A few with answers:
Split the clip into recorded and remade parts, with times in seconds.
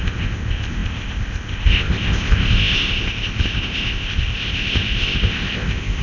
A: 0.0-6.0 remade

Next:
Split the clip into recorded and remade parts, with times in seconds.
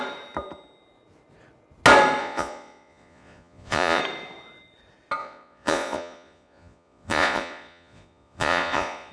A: 0.0-2.2 recorded; 2.2-4.0 remade; 4.0-5.2 recorded; 5.2-9.1 remade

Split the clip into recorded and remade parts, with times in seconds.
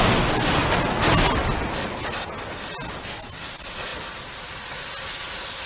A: 0.0-5.7 recorded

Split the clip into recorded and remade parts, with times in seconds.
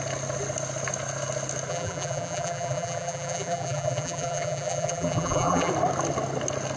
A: 0.0-1.7 recorded; 1.7-5.7 remade; 5.7-6.8 recorded